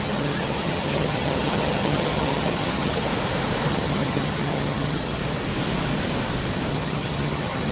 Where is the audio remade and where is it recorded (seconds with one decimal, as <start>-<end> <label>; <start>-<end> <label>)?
0.0-3.1 remade; 3.1-3.7 recorded; 3.7-5.2 remade; 5.2-6.7 recorded; 6.7-7.7 remade

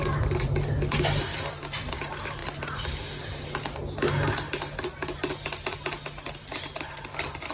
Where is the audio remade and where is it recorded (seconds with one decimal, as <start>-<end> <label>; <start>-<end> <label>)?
0.0-1.3 recorded; 1.3-1.9 remade; 1.9-7.5 recorded